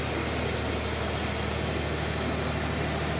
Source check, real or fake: real